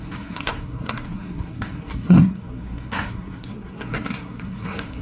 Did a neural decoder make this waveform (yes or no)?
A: yes